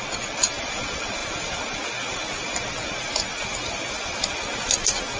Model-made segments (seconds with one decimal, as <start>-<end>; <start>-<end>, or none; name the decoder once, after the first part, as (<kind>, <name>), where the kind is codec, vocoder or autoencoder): none